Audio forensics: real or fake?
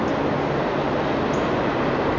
real